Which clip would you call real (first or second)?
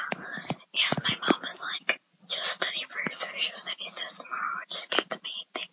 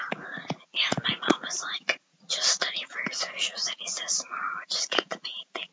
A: first